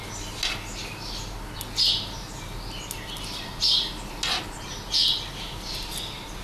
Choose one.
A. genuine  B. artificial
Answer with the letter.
A